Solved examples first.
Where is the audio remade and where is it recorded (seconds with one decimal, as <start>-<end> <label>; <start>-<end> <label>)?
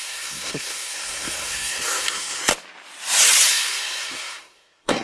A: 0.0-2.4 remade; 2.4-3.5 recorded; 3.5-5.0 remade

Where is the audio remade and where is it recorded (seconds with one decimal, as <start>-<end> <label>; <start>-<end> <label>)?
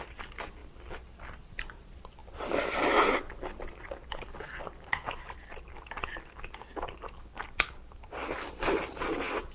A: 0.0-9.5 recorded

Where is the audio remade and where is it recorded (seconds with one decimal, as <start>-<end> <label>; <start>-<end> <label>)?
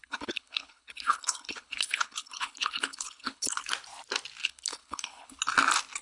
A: 0.0-3.6 remade; 3.6-4.4 recorded; 4.4-5.4 remade; 5.4-6.0 recorded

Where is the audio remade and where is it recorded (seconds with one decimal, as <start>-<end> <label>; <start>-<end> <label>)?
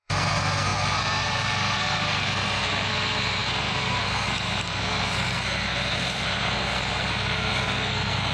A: 0.0-8.3 remade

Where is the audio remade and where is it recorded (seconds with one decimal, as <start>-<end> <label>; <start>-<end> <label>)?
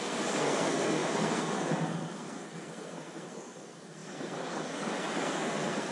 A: 0.0-5.9 remade